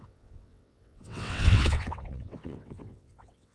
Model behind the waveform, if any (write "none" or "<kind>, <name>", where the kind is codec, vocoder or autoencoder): vocoder, WaveNeXt